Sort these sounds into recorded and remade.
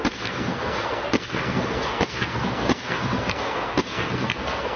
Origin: remade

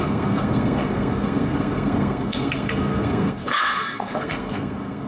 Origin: remade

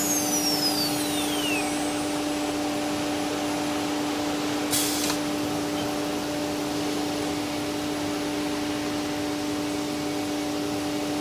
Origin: recorded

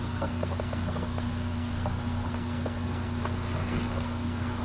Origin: remade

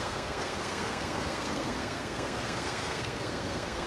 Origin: remade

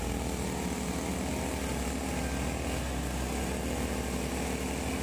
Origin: recorded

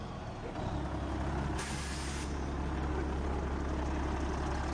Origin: recorded